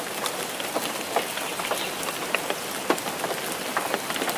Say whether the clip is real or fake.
real